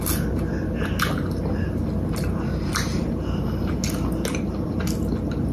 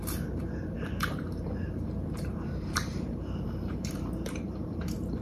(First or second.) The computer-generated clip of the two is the second